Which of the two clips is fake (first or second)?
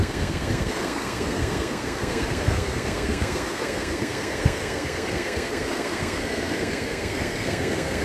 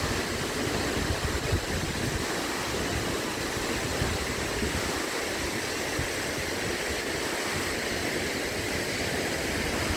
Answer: first